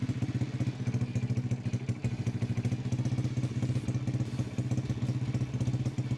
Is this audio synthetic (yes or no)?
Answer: no